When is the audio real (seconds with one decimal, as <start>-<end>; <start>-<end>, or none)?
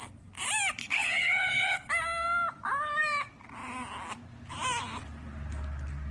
0.0-0.8; 1.9-6.1